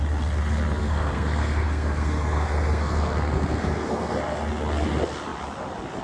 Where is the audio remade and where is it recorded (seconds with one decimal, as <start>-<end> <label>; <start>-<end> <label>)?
0.0-0.8 recorded; 0.8-4.1 remade; 4.1-6.0 recorded